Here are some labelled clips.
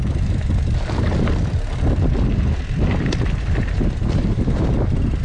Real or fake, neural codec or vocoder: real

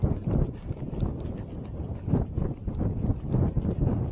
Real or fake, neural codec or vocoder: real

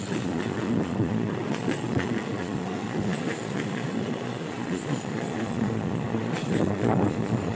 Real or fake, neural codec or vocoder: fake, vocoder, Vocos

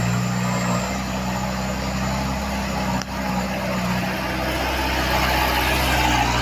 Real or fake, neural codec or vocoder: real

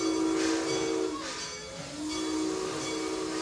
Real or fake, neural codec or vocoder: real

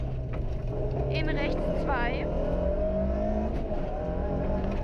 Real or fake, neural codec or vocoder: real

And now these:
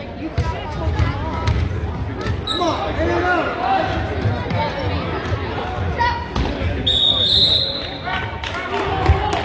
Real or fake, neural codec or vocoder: real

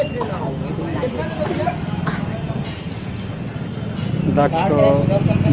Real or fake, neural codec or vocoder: real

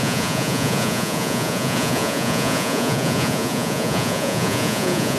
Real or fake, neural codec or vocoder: fake, vocoder, Vocos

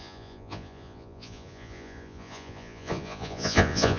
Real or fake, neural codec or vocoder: fake, vocoder, Vocos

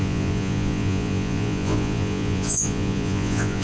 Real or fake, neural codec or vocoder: fake, vocoder, Vocos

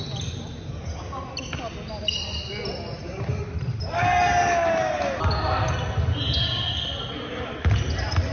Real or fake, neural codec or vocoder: real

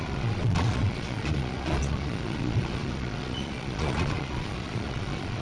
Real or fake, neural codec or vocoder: fake, vocoder, Vocos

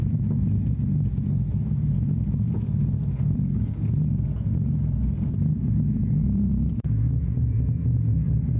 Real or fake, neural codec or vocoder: fake, vocoder, Vocos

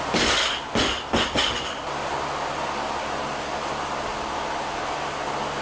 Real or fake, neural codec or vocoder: real